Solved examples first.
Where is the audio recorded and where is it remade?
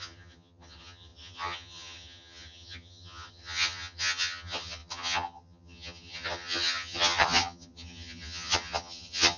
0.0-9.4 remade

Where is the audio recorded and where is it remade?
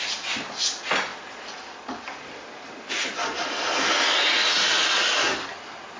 0.0-6.0 recorded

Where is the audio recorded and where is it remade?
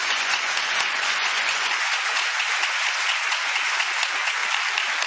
0.0-4.4 remade; 4.4-5.1 recorded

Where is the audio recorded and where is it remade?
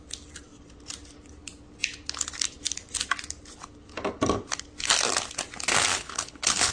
0.0-5.9 recorded; 5.9-6.7 remade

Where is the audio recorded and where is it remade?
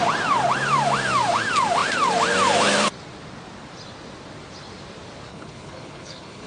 0.0-5.3 recorded; 5.3-6.5 remade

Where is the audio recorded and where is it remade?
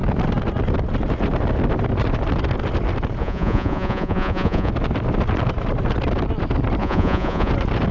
0.0-3.2 recorded; 3.2-4.7 remade; 4.7-6.8 recorded; 6.8-7.5 remade; 7.5-7.9 recorded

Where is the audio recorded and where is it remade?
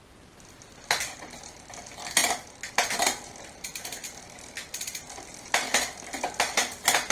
0.0-7.1 recorded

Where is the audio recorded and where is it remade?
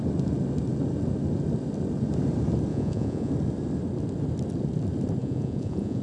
0.0-2.7 recorded; 2.7-3.3 remade; 3.3-5.2 recorded; 5.2-6.0 remade